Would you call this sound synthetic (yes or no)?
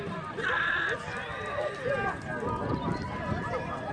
no